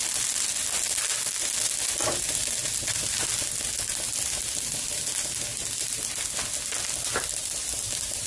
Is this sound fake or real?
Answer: real